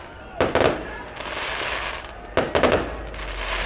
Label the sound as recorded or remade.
recorded